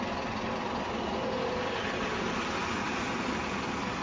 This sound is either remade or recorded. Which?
recorded